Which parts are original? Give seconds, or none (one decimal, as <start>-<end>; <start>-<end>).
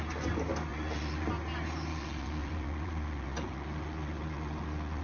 0.0-0.7; 1.3-1.9